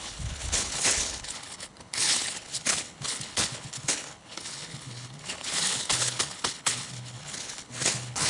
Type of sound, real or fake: fake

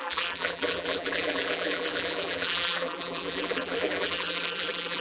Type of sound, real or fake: fake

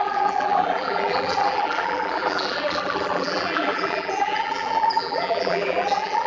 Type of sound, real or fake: fake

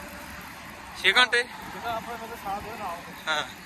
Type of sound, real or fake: real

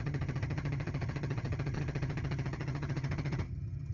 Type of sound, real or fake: fake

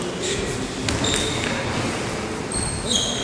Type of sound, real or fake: real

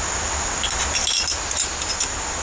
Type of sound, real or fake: real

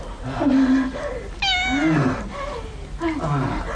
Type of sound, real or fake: real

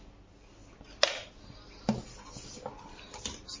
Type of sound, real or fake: real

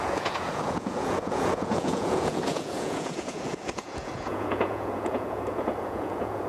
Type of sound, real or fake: fake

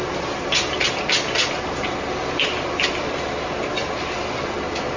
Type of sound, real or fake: real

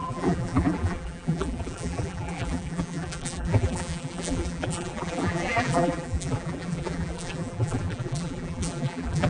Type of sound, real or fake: fake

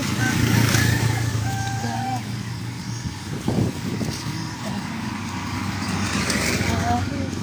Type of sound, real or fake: fake